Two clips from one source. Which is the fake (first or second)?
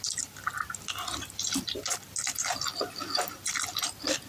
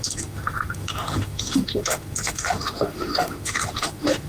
second